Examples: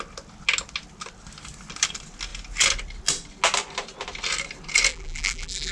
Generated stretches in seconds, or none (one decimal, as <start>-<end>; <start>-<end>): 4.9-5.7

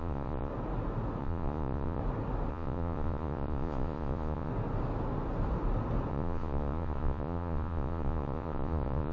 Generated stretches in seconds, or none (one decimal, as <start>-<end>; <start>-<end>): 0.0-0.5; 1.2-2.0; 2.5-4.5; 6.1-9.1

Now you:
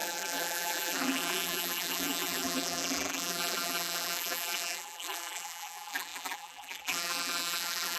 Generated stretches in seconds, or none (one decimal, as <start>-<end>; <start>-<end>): 0.0-8.0

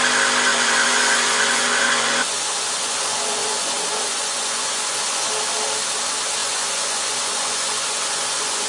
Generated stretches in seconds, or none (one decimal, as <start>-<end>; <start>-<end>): 0.5-5.3; 6.4-8.7

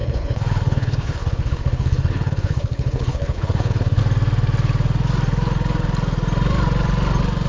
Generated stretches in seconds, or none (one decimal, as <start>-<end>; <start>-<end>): 0.0-4.0